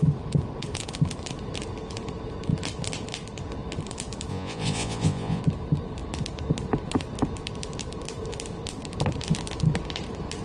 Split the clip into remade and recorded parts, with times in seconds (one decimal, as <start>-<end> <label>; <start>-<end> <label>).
0.0-4.3 recorded; 4.3-5.4 remade; 5.4-10.4 recorded